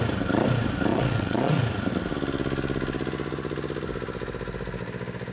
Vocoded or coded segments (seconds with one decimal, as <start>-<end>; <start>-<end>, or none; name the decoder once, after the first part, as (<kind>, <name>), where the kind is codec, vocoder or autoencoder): 0.9-1.6 (vocoder, WaveNeXt)